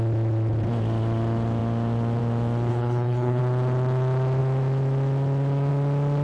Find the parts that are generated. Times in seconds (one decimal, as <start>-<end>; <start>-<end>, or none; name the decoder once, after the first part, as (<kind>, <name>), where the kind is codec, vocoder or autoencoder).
2.7-3.4 (codec, HILCodec)